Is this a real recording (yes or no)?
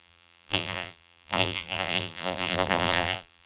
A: no